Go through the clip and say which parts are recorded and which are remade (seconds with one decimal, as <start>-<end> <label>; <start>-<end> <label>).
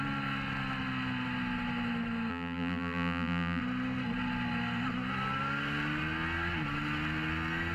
0.0-2.3 recorded; 2.3-3.6 remade; 3.6-7.7 recorded